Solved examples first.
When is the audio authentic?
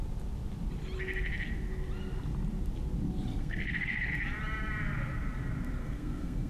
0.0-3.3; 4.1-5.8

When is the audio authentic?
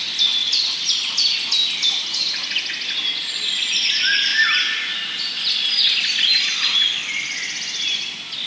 0.0-8.5